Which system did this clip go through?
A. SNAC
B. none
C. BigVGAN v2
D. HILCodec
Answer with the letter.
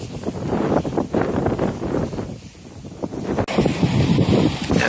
B